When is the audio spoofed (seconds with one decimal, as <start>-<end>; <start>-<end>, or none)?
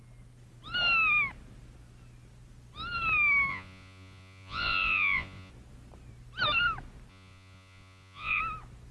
3.5-5.5; 7.1-8.4